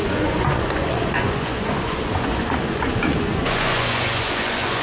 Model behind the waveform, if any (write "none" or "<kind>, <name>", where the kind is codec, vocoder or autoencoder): vocoder, Vocos